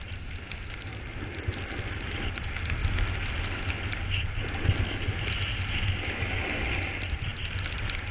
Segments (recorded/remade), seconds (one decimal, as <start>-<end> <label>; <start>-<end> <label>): 0.0-8.1 recorded